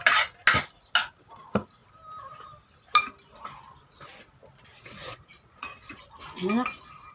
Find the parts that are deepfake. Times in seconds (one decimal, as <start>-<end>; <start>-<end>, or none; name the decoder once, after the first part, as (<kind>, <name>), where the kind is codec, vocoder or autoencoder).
4.7-6.0 (vocoder, Vocos)